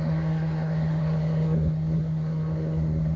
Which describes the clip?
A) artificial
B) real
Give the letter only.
A